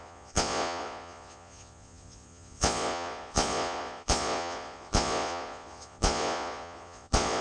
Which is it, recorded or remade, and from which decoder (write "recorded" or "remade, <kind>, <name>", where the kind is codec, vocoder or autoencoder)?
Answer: remade, vocoder, Vocos